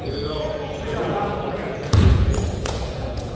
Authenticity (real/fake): fake